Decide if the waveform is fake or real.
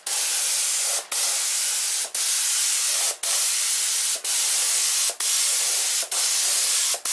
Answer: real